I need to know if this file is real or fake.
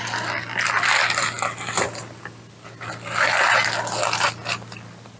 real